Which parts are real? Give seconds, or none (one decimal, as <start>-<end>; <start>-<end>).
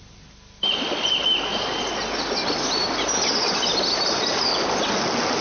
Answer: 0.0-5.4